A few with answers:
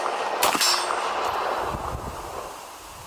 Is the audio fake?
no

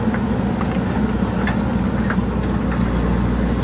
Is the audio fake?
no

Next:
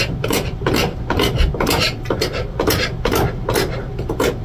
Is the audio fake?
yes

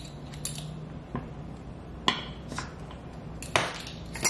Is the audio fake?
no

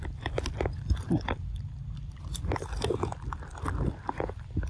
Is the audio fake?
yes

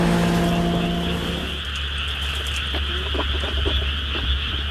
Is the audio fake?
no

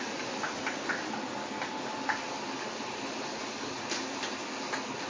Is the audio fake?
no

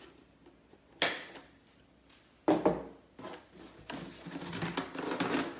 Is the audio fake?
no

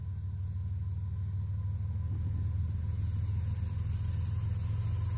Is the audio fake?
no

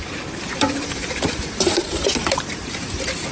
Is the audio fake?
yes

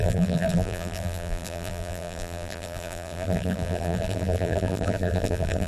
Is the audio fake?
yes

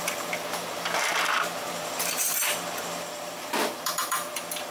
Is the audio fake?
yes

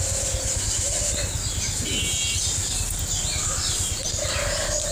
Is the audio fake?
no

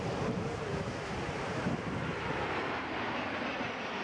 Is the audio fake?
yes